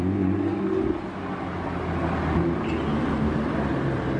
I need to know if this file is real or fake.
real